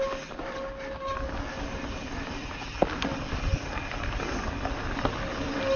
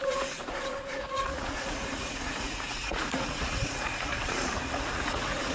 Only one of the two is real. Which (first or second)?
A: first